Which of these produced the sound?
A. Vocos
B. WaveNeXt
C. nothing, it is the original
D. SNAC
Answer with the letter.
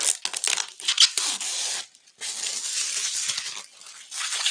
C